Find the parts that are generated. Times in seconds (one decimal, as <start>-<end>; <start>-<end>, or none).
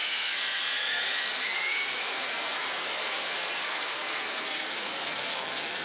0.0-5.8